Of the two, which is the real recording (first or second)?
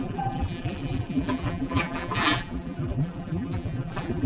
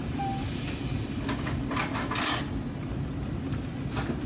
second